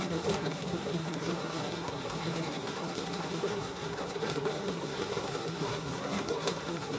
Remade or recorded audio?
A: remade